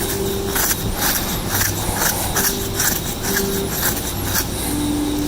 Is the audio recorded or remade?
recorded